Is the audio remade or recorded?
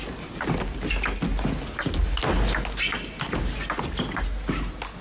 recorded